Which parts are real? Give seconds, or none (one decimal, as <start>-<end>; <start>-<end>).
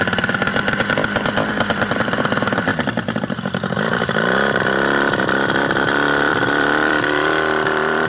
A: 0.5-1.5